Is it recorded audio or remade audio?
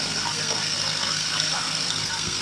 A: remade